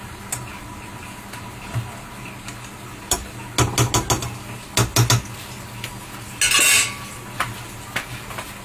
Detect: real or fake real